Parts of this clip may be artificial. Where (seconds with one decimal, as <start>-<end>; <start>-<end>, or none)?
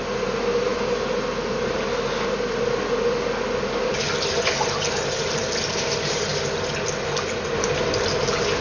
none